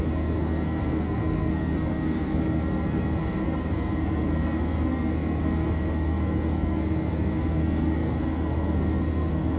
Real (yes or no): no